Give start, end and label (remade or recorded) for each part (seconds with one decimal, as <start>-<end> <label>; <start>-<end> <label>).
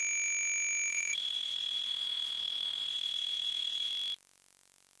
0.0-0.9 recorded; 0.9-3.9 remade; 3.9-5.0 recorded